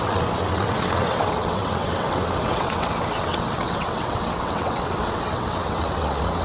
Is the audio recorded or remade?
remade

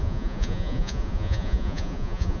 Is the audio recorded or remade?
remade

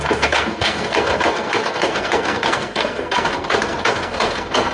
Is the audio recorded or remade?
remade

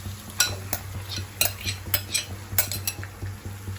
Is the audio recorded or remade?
recorded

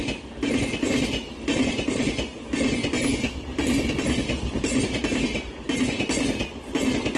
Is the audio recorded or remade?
recorded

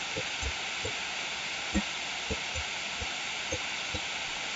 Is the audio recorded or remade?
recorded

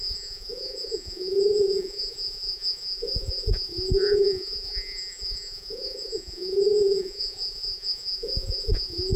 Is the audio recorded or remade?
remade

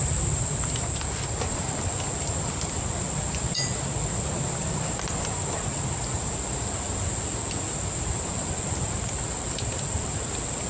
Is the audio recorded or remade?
recorded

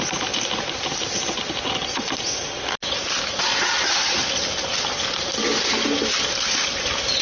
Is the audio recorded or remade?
recorded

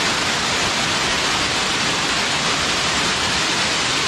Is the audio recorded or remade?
recorded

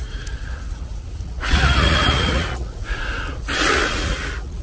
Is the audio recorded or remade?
remade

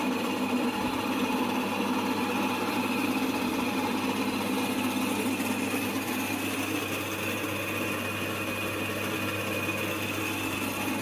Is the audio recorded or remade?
recorded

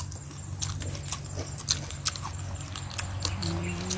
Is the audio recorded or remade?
recorded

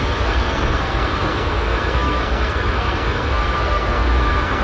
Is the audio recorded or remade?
remade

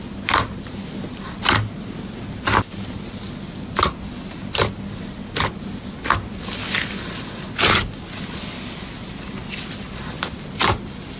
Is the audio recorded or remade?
recorded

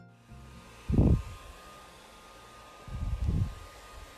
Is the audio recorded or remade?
recorded